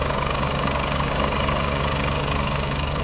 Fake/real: fake